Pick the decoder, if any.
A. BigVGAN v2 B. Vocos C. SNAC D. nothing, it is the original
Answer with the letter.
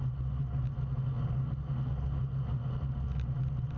D